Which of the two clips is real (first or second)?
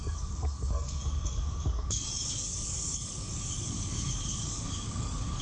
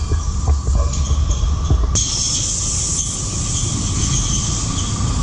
second